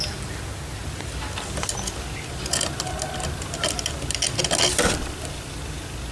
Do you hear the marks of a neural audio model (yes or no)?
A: no